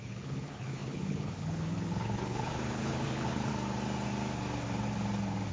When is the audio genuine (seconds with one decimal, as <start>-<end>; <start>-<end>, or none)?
3.5-5.5